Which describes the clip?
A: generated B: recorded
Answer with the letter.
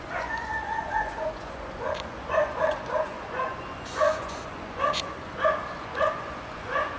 A